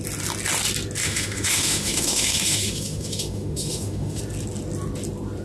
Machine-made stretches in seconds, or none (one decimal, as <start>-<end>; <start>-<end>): 1.0-4.2